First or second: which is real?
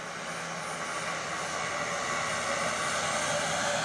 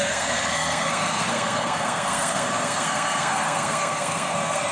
first